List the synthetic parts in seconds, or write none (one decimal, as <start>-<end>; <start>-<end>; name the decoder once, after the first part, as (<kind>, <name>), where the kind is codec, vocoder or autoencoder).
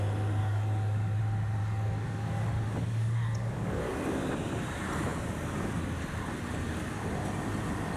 0.4-1.2 (codec, DAC); 1.6-3.8